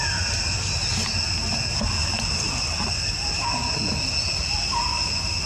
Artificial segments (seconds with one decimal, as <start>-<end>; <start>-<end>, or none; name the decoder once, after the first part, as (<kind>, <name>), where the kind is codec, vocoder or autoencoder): none